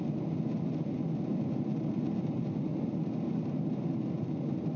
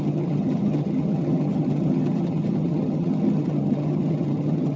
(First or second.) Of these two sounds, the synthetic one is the second